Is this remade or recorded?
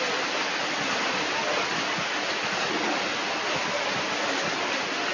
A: recorded